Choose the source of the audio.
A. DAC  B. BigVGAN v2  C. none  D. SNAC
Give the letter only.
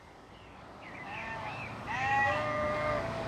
A